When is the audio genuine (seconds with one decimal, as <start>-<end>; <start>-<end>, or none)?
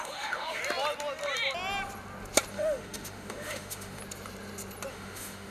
0.6-2.5; 4.0-4.9